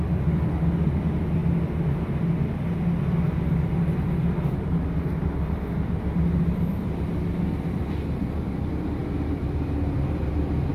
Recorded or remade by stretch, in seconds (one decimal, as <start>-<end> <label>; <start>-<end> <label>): 0.0-1.4 remade; 1.4-4.2 recorded; 4.2-10.7 remade